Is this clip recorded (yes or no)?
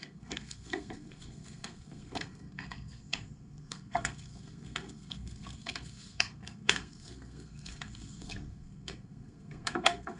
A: no